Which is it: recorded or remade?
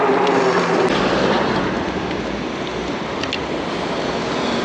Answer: remade